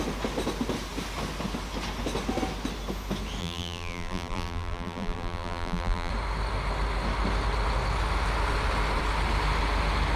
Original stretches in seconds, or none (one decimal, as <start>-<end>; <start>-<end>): 0.0-3.4; 6.1-10.2